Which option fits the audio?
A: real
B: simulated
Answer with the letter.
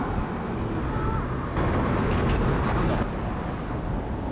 A